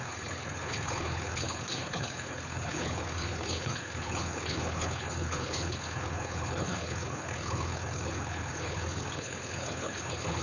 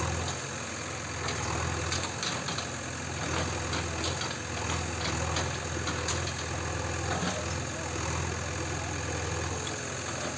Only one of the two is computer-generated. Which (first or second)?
first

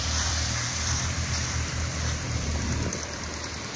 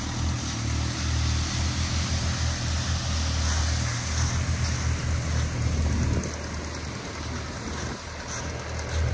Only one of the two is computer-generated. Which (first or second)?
first